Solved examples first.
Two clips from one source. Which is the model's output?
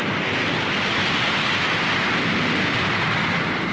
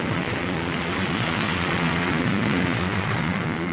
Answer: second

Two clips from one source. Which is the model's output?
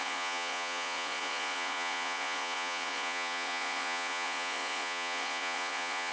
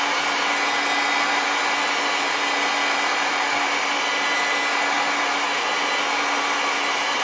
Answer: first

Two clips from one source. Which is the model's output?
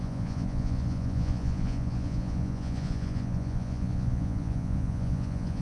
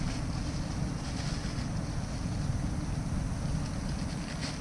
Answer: first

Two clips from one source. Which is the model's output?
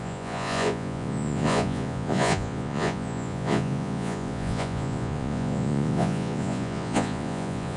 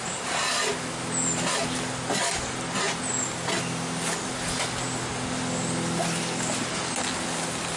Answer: first